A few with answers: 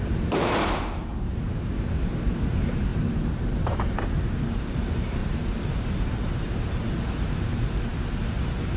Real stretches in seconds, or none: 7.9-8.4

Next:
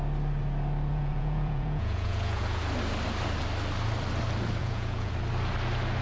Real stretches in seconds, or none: 0.0-0.9; 2.6-4.6; 5.1-6.0

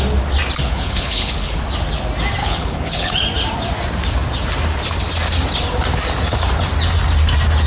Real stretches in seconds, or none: 0.0-0.6; 1.6-2.4; 3.1-7.7

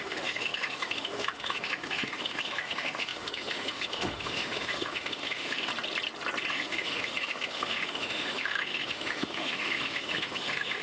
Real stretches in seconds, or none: 5.7-6.5

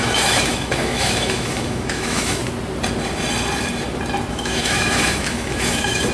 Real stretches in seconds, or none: 2.4-4.3